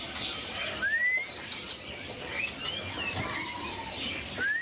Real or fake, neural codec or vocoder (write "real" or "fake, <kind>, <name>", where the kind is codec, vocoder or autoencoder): real